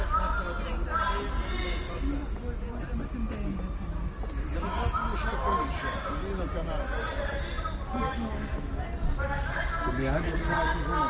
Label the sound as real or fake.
real